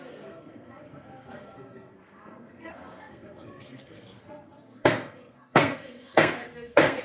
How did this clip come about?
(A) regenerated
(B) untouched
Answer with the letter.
A